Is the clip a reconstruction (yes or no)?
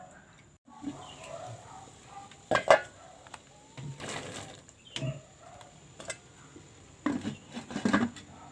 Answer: no